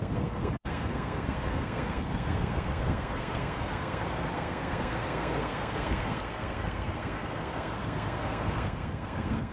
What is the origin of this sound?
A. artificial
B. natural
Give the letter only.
A